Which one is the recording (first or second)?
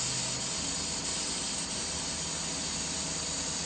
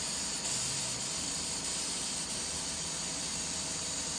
first